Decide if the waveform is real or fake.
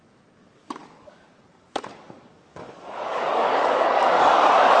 fake